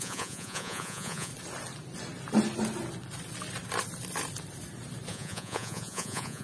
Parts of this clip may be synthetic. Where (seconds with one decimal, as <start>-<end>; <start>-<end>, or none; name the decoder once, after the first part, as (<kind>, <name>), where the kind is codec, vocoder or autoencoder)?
0.0-1.3 (vocoder, Vocos); 5.1-6.4